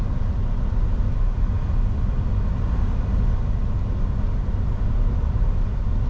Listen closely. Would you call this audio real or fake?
real